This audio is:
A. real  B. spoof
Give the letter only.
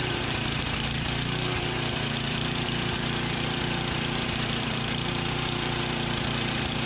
B